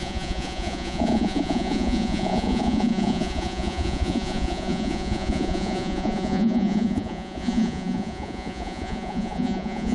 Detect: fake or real fake